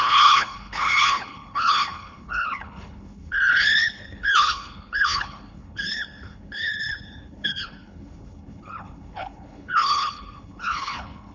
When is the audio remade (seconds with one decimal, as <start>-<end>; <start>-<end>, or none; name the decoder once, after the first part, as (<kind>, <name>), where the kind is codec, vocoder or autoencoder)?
0.0-11.3 (codec, HILCodec)